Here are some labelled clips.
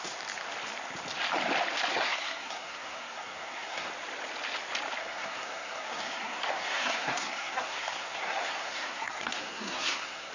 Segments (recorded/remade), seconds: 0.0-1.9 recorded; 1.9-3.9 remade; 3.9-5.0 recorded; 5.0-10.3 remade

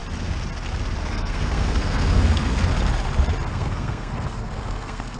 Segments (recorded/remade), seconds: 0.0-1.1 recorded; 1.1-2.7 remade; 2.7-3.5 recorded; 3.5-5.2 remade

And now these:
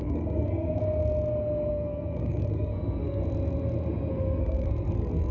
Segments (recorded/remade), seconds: 0.0-0.8 remade; 0.8-1.7 recorded; 1.7-3.2 remade; 3.2-4.1 recorded; 4.1-5.3 remade

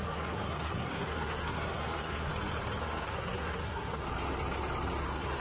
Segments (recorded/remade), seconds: 0.0-2.3 remade; 2.3-2.8 recorded; 2.8-4.0 remade; 4.0-5.0 recorded; 5.0-5.4 remade

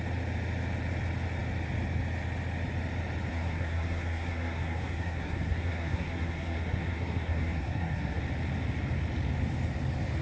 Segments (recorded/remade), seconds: 0.0-3.3 recorded; 3.3-8.2 remade; 8.2-10.2 recorded

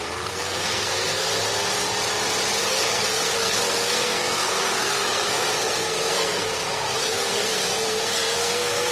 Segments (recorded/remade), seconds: 0.0-1.3 remade; 1.3-2.6 recorded; 2.6-8.9 remade

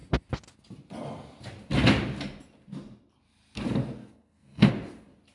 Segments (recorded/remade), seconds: 0.0-4.0 recorded; 4.0-4.7 remade; 4.7-5.3 recorded